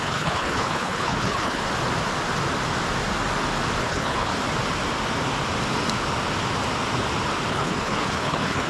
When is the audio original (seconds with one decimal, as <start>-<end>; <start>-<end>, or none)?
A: 1.6-3.8; 4.3-7.5